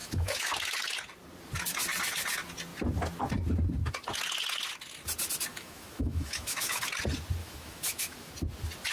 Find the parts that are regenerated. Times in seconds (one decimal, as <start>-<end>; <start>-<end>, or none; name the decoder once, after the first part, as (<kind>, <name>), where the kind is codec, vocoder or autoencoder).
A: 0.0-0.5 (autoencoder, DAC-VAE); 5.5-6.8; 7.4-8.3